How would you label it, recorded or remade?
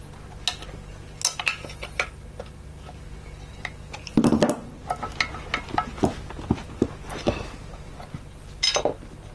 recorded